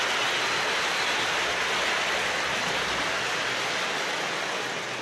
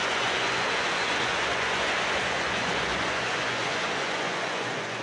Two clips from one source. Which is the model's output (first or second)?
second